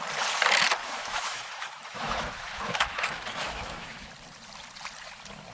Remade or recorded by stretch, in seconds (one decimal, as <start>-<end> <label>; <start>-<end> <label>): 0.0-0.8 recorded; 0.8-4.1 remade; 4.1-5.5 recorded